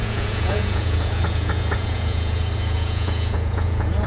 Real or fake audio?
fake